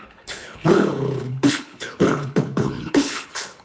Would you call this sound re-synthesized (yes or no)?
yes